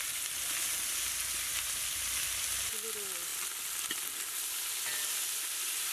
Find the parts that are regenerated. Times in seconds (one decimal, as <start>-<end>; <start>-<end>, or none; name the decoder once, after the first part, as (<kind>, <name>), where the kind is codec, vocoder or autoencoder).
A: none